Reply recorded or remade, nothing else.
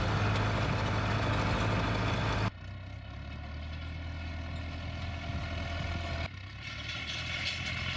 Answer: recorded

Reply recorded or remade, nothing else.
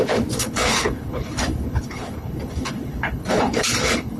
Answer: remade